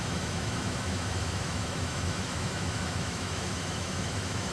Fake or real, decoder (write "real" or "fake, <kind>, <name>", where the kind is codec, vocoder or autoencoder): fake, autoencoder, DAC-VAE